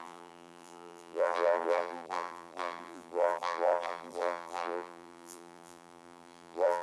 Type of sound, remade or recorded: remade